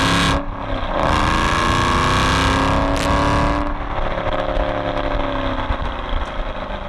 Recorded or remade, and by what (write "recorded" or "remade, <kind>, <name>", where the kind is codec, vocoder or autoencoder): recorded